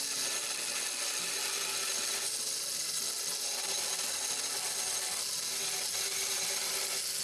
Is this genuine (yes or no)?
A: yes